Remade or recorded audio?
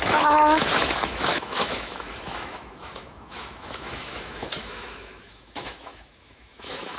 remade